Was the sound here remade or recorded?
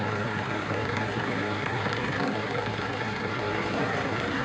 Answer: remade